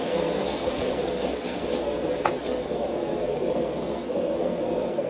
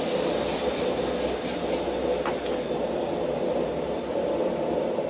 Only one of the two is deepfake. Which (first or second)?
first